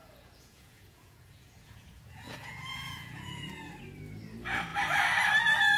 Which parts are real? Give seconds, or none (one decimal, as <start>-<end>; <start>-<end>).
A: 3.5-5.8